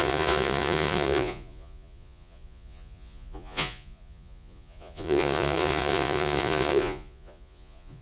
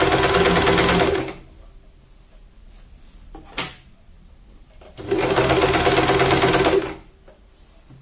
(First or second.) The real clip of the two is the second